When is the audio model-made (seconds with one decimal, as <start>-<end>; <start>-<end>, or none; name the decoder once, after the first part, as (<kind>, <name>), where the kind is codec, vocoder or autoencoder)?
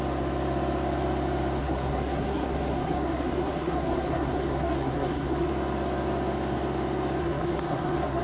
1.6-5.5 (codec, SNAC); 7.2-8.2